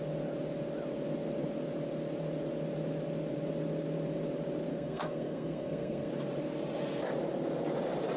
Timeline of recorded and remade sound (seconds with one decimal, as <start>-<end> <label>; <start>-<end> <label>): 0.0-4.7 recorded; 4.7-6.1 remade; 6.1-8.2 recorded